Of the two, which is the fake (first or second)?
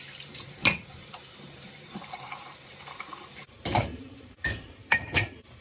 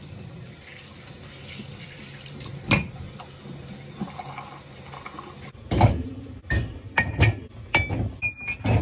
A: first